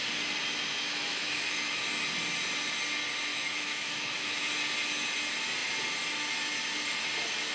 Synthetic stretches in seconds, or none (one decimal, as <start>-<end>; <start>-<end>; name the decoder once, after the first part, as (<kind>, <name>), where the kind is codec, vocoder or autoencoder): 0.9-1.8 (autoencoder, DAC-VAE); 3.3-4.5